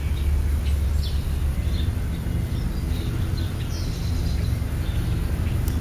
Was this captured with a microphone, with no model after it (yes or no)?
yes